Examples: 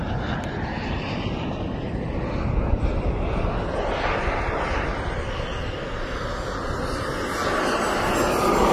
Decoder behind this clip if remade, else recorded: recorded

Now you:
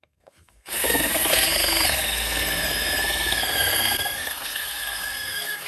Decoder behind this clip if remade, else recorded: remade, codec, SNAC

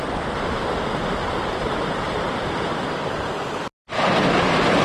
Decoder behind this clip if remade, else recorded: recorded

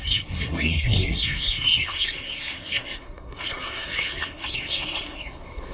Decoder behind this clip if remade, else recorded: remade, codec, SNAC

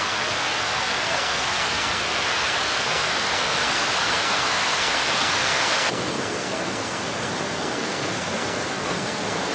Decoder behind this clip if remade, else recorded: remade, codec, SNAC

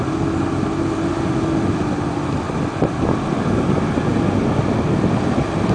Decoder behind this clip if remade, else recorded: recorded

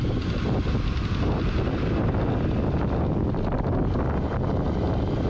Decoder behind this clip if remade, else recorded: recorded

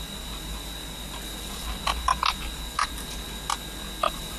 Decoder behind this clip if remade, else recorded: recorded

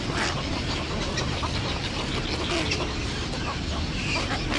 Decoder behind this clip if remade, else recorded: recorded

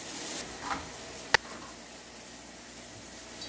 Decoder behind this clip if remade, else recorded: recorded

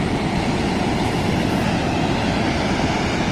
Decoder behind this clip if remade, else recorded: recorded